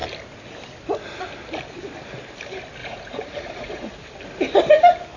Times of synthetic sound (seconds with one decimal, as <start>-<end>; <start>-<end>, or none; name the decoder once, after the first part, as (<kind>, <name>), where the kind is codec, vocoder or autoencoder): 2.8-3.9 (vocoder, Vocos)